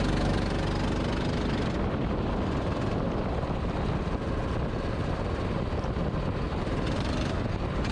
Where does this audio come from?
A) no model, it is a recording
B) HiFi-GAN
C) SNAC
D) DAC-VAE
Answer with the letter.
A